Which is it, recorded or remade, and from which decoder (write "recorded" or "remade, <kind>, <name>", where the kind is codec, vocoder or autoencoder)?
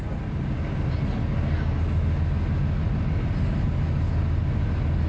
recorded